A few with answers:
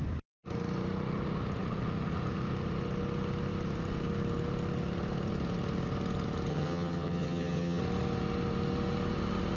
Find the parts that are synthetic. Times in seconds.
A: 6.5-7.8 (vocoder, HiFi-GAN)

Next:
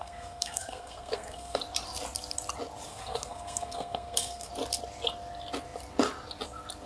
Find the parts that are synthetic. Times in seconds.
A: 0.0-1.6 (codec, SNAC); 2.9-4.5

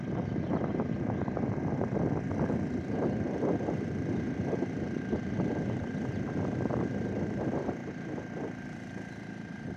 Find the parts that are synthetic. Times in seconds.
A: 0.0-7.8 (vocoder, BigVGAN v2)

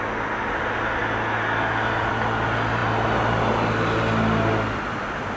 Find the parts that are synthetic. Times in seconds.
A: none

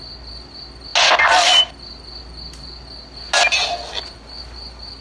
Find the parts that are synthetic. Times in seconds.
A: none

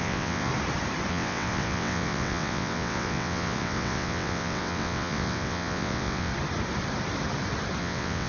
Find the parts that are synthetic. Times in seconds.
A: 0.0-0.5 (vocoder, WaveNeXt); 1.1-6.3; 7.8-8.3

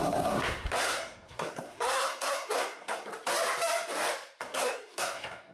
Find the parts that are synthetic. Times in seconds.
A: 0.0-3.1 (codec, SNAC); 4.4-5.5